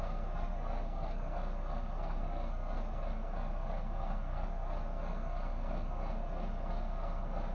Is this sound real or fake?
fake